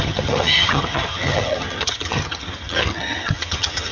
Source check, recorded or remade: remade